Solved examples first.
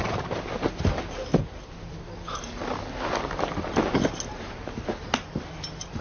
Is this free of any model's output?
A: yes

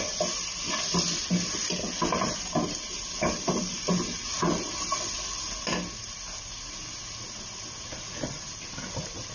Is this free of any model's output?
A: yes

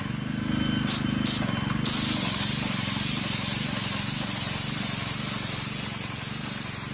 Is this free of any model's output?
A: yes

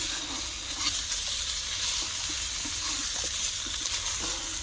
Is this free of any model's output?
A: yes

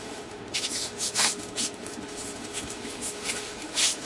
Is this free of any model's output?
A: no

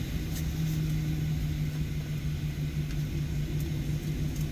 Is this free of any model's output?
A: yes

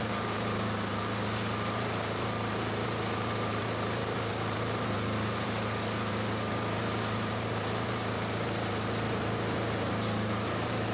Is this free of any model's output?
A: no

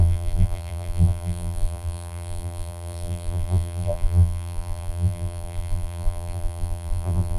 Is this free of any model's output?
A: no